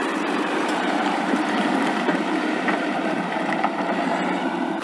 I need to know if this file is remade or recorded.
remade